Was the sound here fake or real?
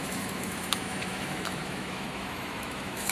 fake